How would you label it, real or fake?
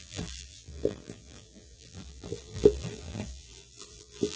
fake